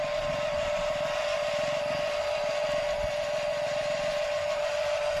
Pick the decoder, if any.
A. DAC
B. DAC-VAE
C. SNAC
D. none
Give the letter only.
D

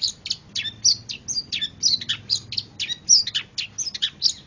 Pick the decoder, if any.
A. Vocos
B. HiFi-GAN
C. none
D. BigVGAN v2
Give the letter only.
C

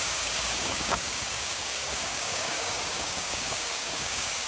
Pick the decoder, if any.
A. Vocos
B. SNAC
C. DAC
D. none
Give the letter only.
C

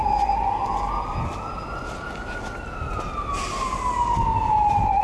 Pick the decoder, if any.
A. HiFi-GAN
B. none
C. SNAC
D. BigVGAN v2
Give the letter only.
B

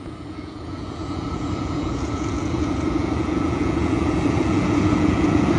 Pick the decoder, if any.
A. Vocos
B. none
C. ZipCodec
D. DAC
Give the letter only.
A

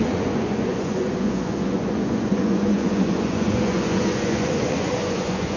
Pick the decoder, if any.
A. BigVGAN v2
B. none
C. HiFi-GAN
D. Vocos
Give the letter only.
D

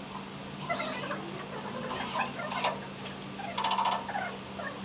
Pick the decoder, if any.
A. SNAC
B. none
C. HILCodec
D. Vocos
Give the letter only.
B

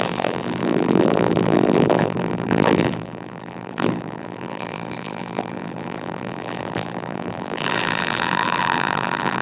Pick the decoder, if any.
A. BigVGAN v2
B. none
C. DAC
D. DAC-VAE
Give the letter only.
A